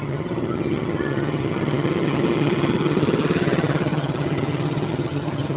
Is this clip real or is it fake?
fake